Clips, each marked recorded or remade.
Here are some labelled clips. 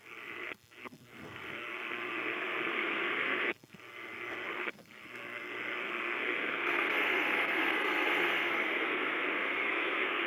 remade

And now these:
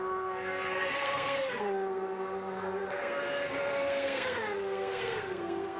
remade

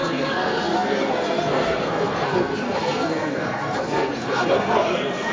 remade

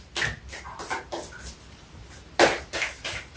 recorded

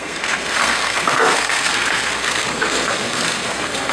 remade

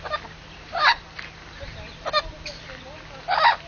recorded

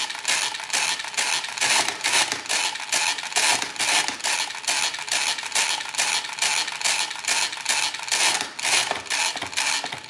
recorded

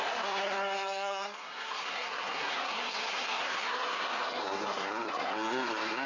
remade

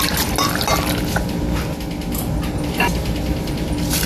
recorded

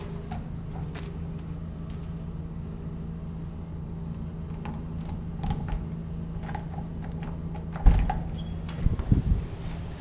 recorded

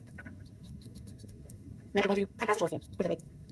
remade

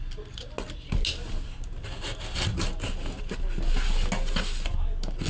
recorded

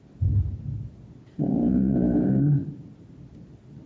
recorded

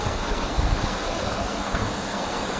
remade